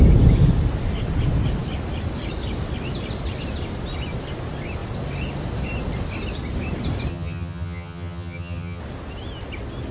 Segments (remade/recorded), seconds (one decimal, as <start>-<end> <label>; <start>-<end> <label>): 0.0-7.1 recorded; 7.1-8.8 remade; 8.8-9.9 recorded